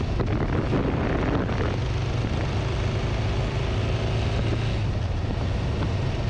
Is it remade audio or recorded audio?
recorded